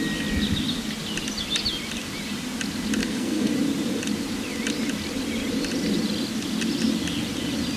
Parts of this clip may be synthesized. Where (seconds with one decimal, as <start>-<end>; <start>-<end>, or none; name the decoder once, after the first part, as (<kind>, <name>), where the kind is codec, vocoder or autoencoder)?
3.0-3.5 (codec, SNAC)